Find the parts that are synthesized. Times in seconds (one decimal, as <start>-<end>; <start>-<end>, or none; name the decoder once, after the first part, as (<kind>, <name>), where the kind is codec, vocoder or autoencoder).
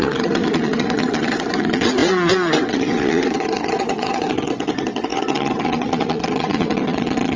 0.0-7.4 (vocoder, WaveNeXt)